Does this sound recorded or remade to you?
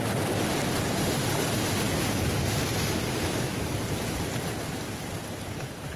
recorded